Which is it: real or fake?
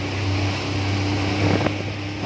real